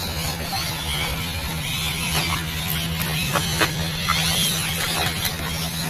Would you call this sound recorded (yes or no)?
yes